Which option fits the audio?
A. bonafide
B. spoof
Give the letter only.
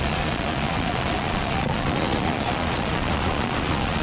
B